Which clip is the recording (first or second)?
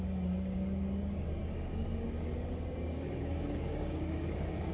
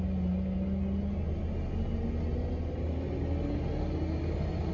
second